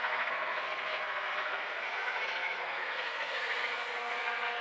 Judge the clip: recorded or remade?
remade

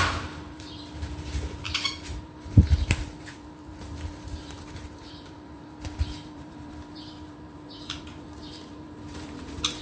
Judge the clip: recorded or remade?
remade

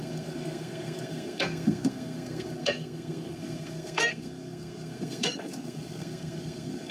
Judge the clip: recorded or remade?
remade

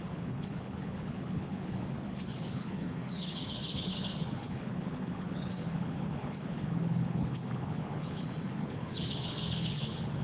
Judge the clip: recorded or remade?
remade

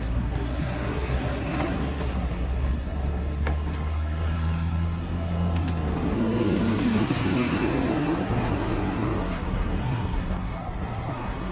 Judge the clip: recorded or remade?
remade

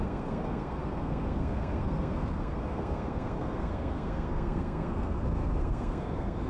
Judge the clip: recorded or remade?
remade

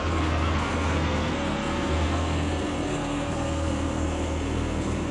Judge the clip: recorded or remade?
remade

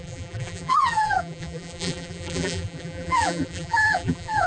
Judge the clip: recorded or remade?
remade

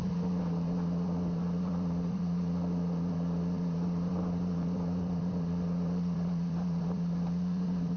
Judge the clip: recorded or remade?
remade